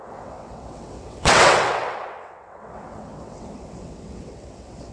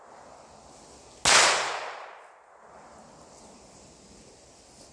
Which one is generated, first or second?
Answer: first